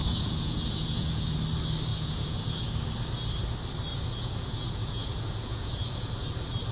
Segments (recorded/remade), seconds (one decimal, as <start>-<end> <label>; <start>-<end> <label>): 0.0-1.4 remade; 1.4-1.9 recorded; 1.9-2.8 remade; 2.8-3.9 recorded; 3.9-6.3 remade; 6.3-6.7 recorded